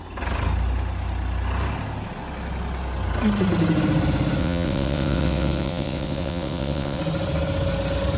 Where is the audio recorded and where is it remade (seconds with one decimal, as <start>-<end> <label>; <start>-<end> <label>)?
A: 0.0-4.4 recorded; 4.4-7.0 remade; 7.0-8.2 recorded